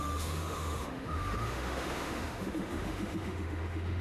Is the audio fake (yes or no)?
yes